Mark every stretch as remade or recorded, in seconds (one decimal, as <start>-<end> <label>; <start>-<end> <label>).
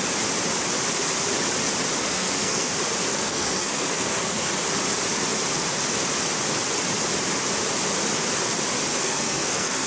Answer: 0.0-2.0 recorded; 2.0-2.7 remade; 2.7-3.1 recorded; 3.1-4.5 remade; 4.5-9.0 recorded; 9.0-9.9 remade